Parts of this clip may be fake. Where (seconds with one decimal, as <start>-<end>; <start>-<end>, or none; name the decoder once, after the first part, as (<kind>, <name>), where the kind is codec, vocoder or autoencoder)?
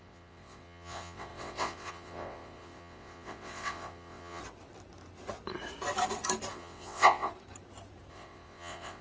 0.0-4.4 (vocoder, WaveNeXt); 6.5-7.3; 8.1-9.0